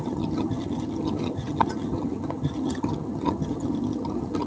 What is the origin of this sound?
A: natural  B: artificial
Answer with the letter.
B